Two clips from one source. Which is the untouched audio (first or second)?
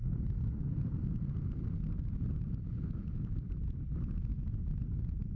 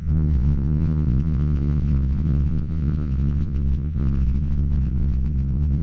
first